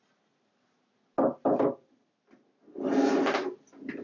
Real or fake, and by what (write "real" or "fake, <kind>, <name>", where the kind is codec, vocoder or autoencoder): real